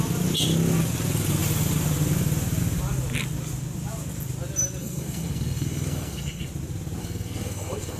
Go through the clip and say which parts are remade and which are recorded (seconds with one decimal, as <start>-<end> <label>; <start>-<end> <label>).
0.0-4.8 recorded; 4.8-6.5 remade; 6.5-7.0 recorded; 7.0-8.0 remade

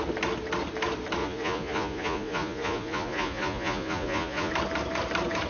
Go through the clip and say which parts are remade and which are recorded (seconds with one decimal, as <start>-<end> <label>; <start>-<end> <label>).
0.0-1.2 recorded; 1.2-4.5 remade; 4.5-5.5 recorded

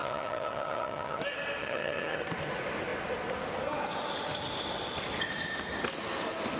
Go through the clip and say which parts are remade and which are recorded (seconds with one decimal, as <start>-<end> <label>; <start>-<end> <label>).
0.0-1.2 remade; 1.2-1.6 recorded; 1.6-2.2 remade; 2.2-6.6 recorded

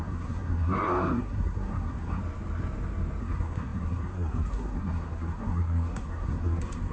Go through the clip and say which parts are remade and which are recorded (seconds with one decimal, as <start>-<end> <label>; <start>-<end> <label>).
0.0-2.2 remade; 2.2-3.2 recorded; 3.2-6.9 remade

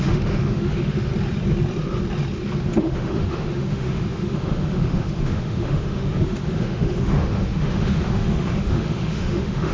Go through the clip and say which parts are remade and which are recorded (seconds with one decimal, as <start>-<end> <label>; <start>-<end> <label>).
0.0-1.1 remade; 1.1-2.8 recorded; 2.8-9.7 remade

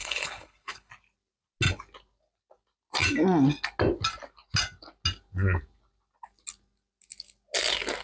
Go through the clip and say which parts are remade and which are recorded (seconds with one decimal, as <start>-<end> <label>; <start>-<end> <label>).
0.0-0.9 remade; 0.9-8.0 recorded